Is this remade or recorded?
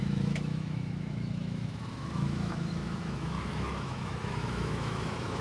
remade